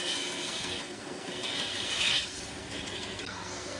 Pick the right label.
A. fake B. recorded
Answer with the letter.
A